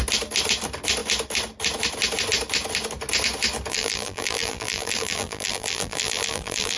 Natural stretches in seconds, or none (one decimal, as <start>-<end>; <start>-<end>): 0.0-3.7